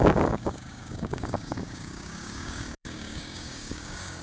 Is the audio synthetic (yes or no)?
yes